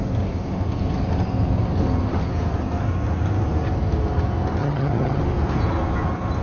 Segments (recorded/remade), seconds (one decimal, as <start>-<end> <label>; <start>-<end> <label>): 0.0-4.6 recorded; 4.6-5.2 remade; 5.2-6.4 recorded